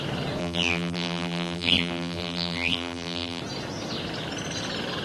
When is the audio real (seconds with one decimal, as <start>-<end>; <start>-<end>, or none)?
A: 0.0-0.4; 3.4-5.0

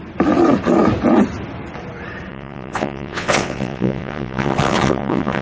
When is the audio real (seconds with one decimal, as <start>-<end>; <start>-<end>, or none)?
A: 0.0-2.3